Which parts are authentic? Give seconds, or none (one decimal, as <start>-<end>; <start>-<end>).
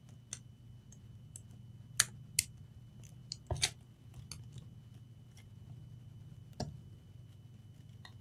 0.0-8.2